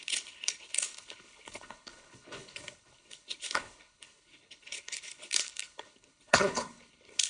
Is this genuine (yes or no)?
no